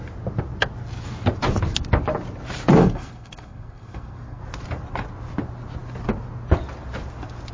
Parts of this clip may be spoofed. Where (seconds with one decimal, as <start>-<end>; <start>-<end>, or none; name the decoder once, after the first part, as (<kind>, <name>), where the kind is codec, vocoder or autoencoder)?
2.8-4.4 (codec, SNAC)